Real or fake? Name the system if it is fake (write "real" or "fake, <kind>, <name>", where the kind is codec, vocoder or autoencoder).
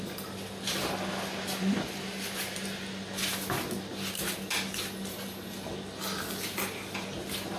real